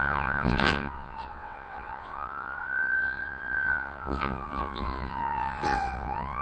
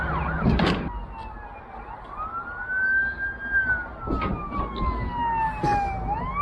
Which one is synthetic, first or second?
first